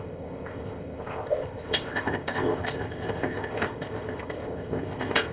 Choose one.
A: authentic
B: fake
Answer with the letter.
B